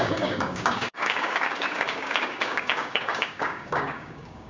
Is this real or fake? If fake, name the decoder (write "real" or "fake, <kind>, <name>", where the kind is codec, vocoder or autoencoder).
fake, codec, DAC